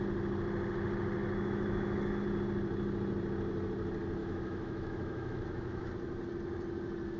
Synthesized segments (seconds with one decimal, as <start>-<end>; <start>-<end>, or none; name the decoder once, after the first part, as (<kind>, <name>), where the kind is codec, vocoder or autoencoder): 1.2-2.2 (autoencoder, DAC-VAE); 4.2-5.9